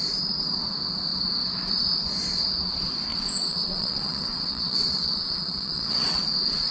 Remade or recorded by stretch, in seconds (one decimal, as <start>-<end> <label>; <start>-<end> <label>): 0.0-3.1 recorded; 3.1-6.2 remade; 6.2-6.7 recorded